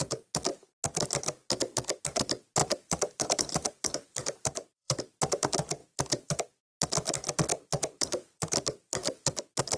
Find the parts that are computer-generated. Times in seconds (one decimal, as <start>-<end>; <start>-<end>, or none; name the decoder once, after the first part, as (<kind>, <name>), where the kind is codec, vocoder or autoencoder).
2.6-5.0 (vocoder, BigVGAN v2); 5.8-6.4; 7.5-9.4